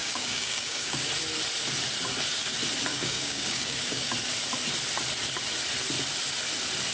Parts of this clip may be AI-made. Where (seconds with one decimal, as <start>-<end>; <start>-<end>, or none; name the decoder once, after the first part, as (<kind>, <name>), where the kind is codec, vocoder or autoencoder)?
0.0-1.1 (codec, DAC); 2.9-4.1